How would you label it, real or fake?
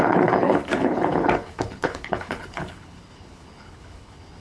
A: fake